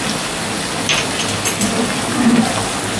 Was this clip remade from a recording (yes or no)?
no